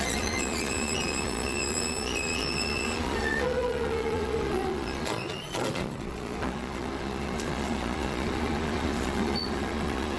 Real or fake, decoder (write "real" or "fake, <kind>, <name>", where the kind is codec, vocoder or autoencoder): fake, vocoder, Vocos